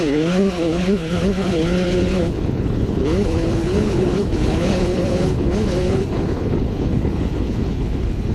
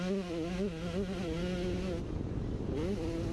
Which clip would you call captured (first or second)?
second